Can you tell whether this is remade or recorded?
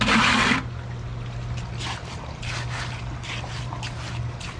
recorded